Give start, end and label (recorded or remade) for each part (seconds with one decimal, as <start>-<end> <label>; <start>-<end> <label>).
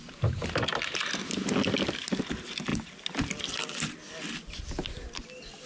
0.0-2.7 recorded; 2.7-4.6 remade; 4.6-5.7 recorded